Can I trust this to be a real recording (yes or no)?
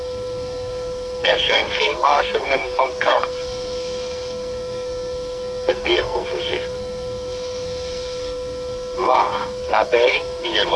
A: no